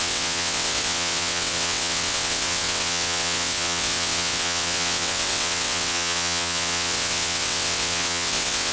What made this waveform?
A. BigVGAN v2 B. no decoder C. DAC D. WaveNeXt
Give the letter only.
D